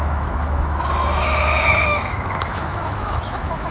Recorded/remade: remade